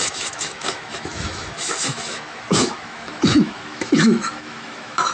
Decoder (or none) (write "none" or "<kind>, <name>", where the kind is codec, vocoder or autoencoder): autoencoder, DAC-VAE